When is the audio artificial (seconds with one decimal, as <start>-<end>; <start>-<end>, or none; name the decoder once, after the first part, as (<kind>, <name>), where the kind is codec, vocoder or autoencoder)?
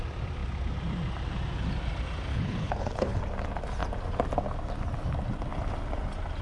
2.3-3.2 (codec, HILCodec)